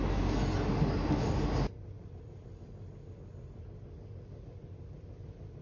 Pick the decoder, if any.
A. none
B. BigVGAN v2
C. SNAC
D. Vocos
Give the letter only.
A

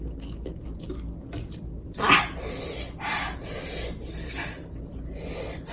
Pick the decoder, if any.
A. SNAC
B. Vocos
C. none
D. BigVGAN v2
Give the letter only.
C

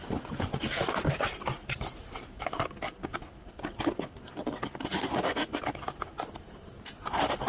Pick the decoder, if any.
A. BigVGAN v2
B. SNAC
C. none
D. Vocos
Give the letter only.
C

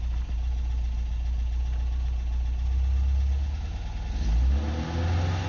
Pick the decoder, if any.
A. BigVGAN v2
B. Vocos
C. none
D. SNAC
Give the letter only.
C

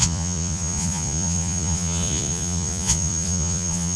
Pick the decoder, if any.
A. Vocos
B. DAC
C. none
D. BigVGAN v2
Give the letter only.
A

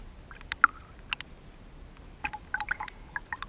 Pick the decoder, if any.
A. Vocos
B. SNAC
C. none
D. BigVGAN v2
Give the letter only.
C